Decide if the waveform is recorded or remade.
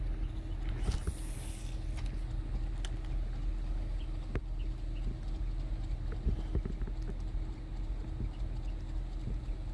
recorded